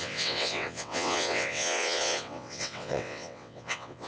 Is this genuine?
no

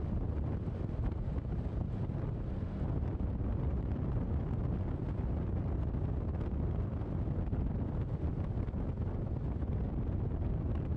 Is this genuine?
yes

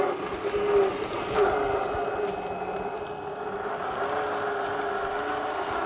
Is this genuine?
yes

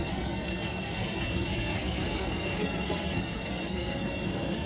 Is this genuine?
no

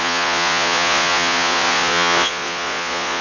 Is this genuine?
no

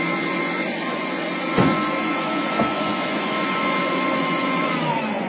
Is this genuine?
no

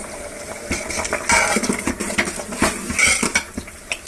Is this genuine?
yes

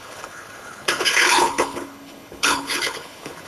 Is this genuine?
no